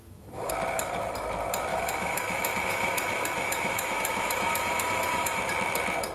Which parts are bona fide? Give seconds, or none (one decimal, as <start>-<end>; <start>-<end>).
0.5-1.7; 5.4-6.1